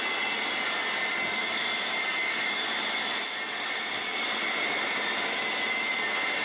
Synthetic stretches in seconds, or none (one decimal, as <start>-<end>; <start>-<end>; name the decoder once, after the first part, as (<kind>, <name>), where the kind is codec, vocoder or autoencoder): 1.4-5.2 (vocoder, BigVGAN v2)